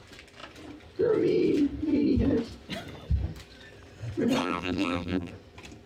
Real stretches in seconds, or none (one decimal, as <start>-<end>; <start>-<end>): 0.0-4.4; 5.3-5.9